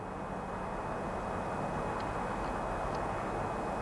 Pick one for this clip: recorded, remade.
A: recorded